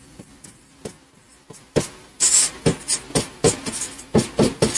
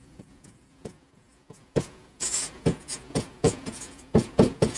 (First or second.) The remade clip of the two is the second